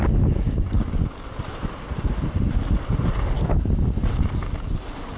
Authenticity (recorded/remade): recorded